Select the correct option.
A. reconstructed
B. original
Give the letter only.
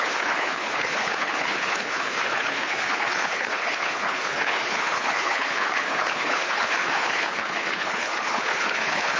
A